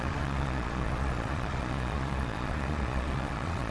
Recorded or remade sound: remade